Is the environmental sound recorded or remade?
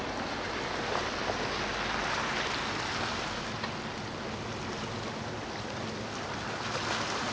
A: recorded